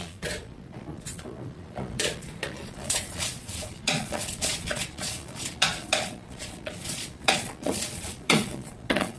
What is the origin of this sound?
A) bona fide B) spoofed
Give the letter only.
B